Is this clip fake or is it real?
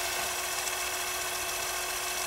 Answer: real